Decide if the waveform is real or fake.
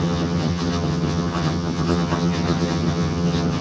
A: fake